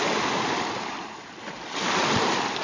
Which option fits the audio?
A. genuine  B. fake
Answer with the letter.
A